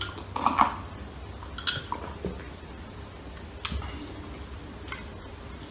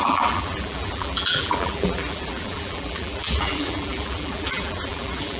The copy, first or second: second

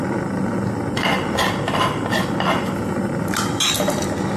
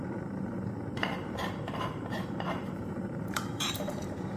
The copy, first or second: second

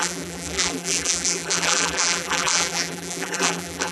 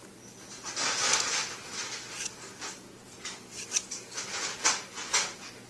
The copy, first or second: first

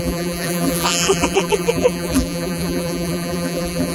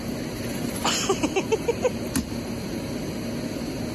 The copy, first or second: first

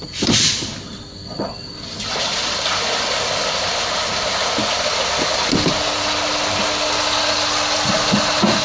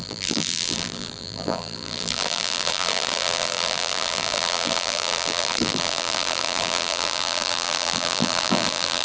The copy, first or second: second